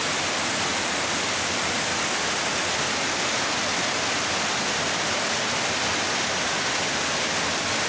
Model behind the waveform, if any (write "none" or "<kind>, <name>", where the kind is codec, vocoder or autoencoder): vocoder, BigVGAN v2